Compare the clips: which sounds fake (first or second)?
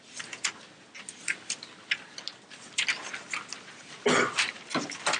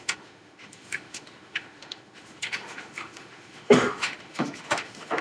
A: second